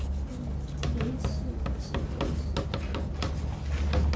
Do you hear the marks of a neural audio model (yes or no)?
no